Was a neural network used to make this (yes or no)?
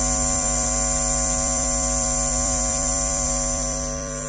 yes